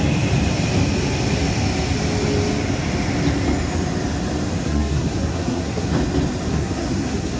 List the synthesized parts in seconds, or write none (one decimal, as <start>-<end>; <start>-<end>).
4.6-5.9; 6.5-7.4